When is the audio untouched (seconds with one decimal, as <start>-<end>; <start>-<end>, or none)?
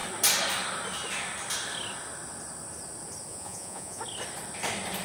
0.0-3.3; 4.0-5.0